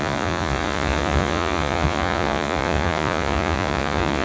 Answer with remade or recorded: remade